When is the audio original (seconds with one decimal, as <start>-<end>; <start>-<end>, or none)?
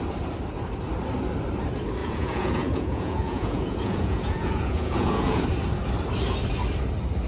0.0-2.0; 5.4-7.3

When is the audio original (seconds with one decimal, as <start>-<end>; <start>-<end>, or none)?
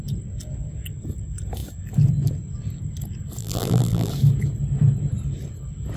0.0-3.4; 4.1-6.0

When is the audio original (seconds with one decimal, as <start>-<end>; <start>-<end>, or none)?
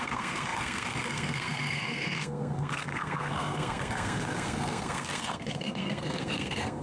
none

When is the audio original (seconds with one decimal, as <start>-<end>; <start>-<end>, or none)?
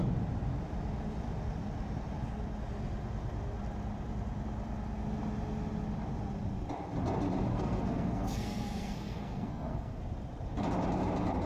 0.0-7.5; 10.0-11.5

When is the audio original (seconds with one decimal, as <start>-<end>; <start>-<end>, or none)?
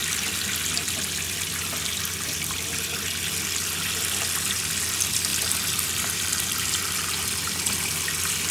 0.0-5.3; 6.7-8.5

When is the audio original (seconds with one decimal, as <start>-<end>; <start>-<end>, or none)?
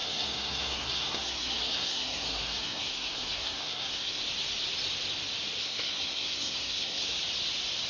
4.2-5.6; 7.2-7.9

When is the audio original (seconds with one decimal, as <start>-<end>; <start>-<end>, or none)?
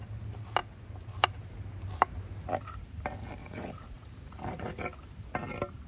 0.0-3.4; 4.8-5.9